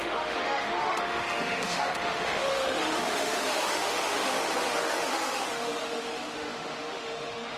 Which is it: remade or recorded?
remade